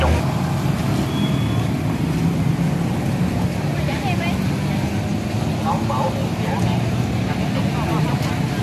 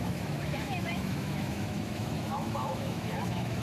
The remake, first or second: second